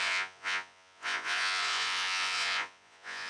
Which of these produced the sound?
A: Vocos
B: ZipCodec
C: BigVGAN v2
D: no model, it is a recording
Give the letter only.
A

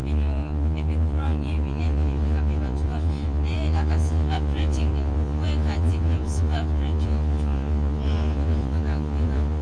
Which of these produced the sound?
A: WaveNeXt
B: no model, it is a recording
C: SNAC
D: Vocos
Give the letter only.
D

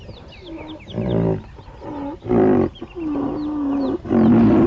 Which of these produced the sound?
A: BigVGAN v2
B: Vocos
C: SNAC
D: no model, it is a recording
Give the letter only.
D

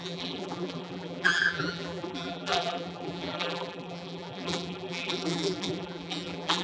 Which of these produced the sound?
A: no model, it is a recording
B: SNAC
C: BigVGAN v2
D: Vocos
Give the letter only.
C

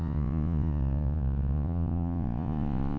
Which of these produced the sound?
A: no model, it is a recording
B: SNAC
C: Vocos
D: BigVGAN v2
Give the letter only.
C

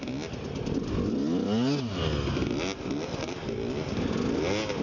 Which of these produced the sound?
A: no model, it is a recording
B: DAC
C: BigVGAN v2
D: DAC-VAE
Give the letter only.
A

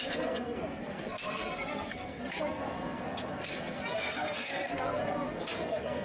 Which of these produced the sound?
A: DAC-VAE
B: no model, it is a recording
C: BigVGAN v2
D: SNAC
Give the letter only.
D